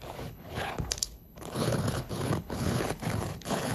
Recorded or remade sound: remade